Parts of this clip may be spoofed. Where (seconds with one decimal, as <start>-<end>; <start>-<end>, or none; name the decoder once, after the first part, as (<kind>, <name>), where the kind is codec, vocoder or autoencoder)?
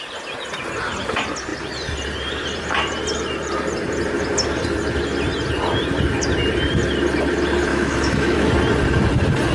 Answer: 7.7-8.5 (autoencoder, DAC-VAE)